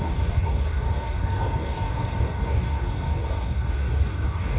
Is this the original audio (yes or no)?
no